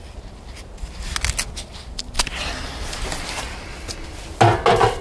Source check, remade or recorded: recorded